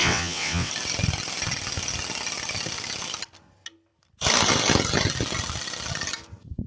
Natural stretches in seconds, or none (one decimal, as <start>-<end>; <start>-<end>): 0.7-6.7